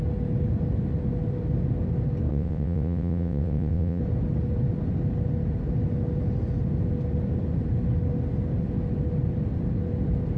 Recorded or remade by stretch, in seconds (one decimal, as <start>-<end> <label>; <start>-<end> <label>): 0.0-2.3 recorded; 2.3-4.0 remade; 4.0-10.4 recorded